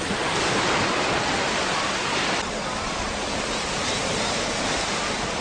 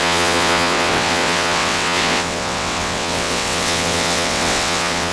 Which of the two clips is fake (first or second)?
second